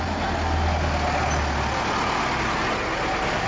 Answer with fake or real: real